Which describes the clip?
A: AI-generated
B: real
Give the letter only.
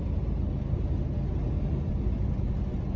B